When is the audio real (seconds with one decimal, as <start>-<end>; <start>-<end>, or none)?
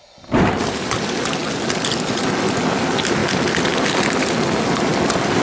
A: 3.2-4.3